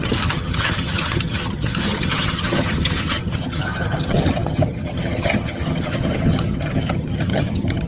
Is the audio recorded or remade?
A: remade